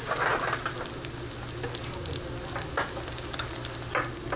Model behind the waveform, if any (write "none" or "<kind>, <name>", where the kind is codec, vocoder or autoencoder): none